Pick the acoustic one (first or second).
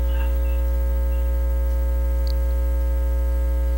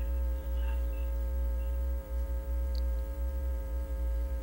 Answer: first